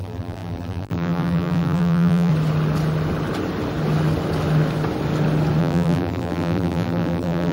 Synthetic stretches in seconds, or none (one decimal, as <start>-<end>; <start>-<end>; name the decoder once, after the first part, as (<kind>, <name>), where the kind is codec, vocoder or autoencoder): 0.0-2.3 (vocoder, BigVGAN v2); 5.6-7.5